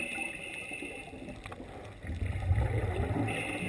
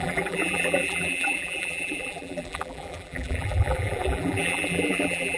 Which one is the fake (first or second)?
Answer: second